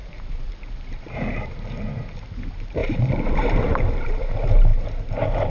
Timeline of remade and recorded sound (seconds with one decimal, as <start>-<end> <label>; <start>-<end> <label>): 0.0-5.5 remade